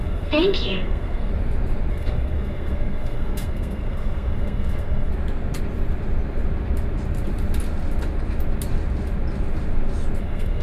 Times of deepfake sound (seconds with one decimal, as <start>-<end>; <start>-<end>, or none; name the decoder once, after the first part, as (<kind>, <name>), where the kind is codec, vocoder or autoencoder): 0.0-1.3 (codec, SNAC); 1.9-5.1; 10.2-10.6